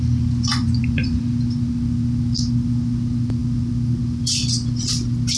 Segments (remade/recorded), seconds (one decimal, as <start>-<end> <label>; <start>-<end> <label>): 0.0-0.5 recorded; 0.5-1.2 remade; 1.2-5.4 recorded